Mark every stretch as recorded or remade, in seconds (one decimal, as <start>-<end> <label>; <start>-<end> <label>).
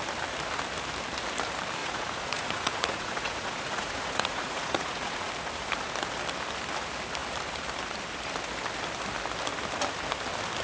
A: 0.0-1.8 recorded; 1.8-5.3 remade; 5.3-10.6 recorded